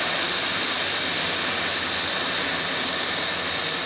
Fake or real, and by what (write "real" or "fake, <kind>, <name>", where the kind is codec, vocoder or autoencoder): real